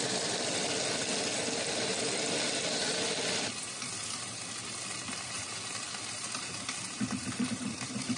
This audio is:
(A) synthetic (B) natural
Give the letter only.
B